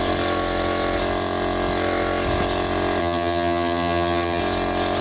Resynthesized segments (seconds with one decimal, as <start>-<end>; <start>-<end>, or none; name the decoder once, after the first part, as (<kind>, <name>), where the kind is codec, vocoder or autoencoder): 3.0-4.4 (vocoder, HiFi-GAN)